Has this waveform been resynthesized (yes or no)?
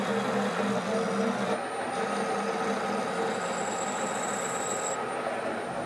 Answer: no